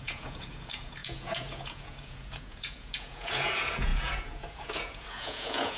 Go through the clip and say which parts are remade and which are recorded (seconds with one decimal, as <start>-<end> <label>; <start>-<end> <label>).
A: 0.0-5.8 remade